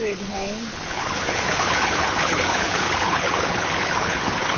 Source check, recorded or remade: remade